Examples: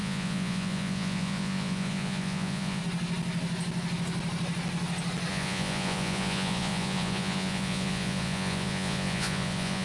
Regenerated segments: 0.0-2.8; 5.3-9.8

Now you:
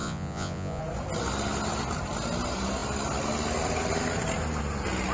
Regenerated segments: 0.0-0.8

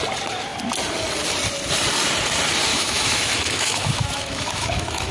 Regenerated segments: 2.7-5.1

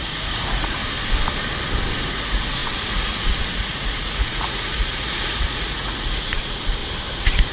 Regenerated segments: 0.0-0.8; 2.1-6.8